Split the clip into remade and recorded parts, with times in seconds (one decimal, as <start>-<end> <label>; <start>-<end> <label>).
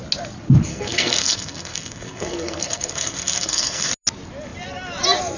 0.0-0.7 recorded; 0.7-3.9 remade; 3.9-5.4 recorded